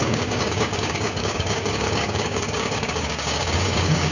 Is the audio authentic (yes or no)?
no